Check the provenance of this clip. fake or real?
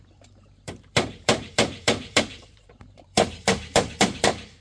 fake